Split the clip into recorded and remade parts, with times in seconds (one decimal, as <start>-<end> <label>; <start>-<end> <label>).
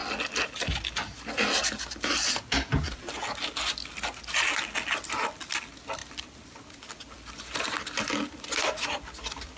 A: 0.0-6.0 recorded; 6.0-7.8 remade; 7.8-9.6 recorded